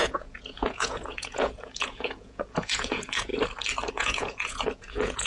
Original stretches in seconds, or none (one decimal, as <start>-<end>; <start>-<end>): 3.3-3.9